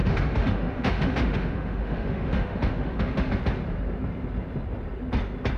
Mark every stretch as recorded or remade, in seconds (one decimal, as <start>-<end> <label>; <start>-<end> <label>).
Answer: 0.0-3.4 remade; 3.4-5.6 recorded